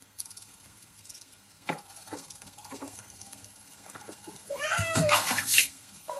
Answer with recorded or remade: remade